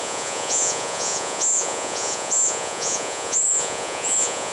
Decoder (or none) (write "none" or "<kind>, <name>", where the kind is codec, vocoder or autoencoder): vocoder, Vocos